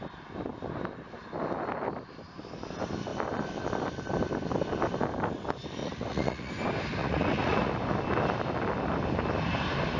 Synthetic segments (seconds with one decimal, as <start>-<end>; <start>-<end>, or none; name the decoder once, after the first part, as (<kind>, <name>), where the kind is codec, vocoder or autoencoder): 5.8-6.5 (vocoder, Vocos); 7.0-7.7